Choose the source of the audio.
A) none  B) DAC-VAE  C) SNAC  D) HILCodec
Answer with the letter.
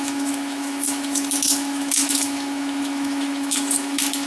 B